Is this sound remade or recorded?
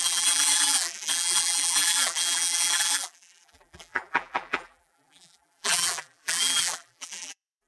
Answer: remade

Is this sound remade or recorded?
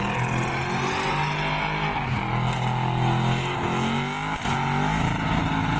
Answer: recorded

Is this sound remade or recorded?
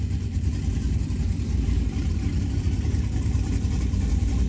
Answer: remade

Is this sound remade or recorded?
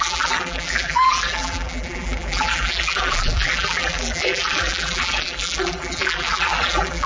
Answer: remade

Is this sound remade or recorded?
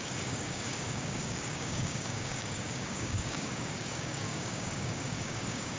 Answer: remade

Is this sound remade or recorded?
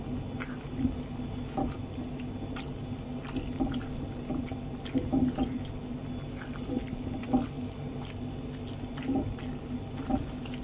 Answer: recorded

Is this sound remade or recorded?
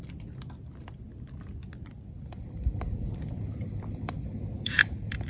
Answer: recorded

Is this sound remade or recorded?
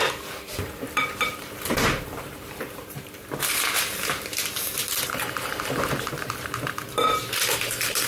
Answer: remade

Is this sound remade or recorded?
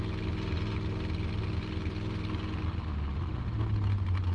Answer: recorded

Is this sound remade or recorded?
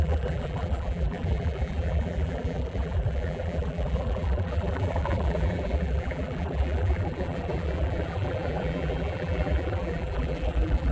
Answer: remade